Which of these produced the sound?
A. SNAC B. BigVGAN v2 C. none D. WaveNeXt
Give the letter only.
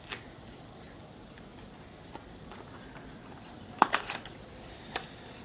C